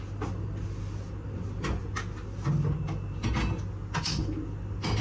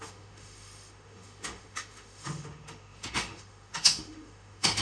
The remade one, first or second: second